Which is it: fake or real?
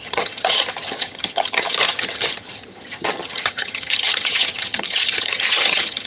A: fake